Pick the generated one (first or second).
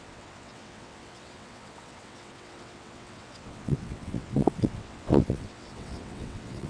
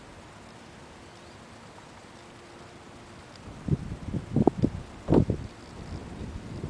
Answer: first